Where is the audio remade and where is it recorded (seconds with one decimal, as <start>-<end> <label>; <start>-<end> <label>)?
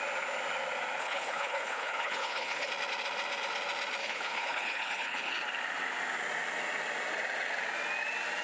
0.0-1.0 recorded; 1.0-2.7 remade; 2.7-4.0 recorded; 4.0-5.3 remade; 5.3-8.4 recorded